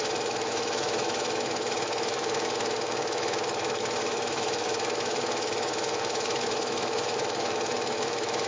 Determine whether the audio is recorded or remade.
remade